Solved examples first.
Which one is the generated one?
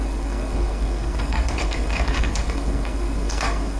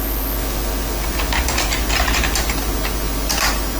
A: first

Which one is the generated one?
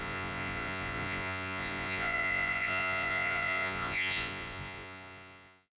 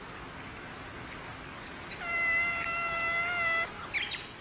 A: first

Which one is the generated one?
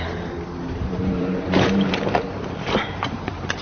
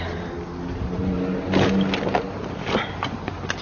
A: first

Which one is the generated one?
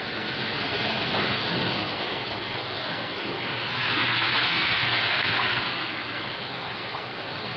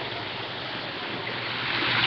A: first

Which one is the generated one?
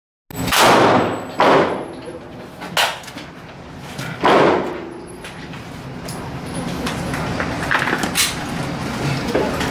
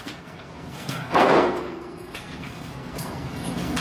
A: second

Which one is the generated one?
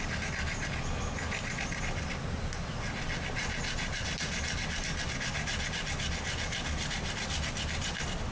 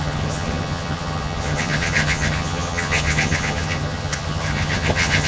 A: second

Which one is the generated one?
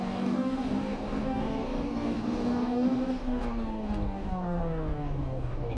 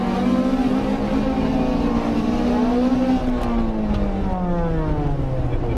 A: first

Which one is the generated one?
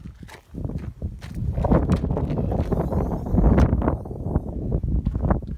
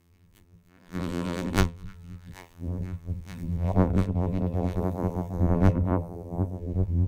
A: second